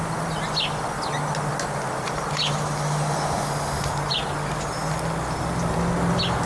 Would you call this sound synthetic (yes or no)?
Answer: no